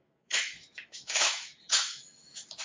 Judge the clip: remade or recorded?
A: remade